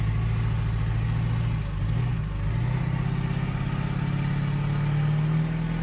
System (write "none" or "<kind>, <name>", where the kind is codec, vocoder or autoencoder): none